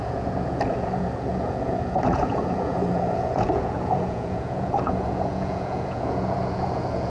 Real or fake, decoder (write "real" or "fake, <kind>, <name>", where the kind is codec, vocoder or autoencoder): fake, vocoder, Vocos